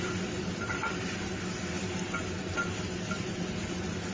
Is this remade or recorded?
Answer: recorded